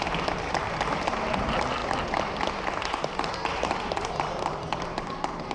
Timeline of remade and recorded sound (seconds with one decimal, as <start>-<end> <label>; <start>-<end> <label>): 0.0-5.5 recorded